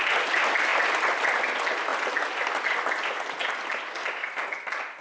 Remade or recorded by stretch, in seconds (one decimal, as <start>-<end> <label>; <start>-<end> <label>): 0.0-5.0 recorded